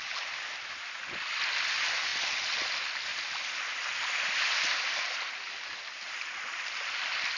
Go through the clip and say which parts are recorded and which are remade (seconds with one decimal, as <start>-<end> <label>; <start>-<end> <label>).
0.0-7.4 recorded